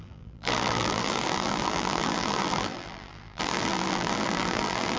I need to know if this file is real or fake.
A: fake